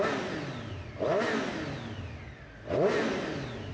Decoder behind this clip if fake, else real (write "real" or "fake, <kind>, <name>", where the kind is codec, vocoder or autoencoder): real